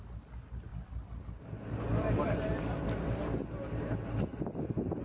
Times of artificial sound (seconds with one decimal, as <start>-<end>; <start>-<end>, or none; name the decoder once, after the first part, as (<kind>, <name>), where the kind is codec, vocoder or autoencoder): none